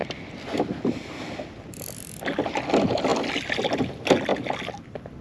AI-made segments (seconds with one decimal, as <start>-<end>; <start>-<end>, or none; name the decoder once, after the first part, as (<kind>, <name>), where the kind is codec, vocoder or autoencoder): none